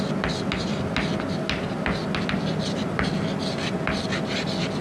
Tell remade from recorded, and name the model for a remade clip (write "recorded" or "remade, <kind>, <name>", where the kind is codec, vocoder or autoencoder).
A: recorded